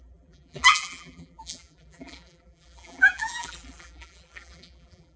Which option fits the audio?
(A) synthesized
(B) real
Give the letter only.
A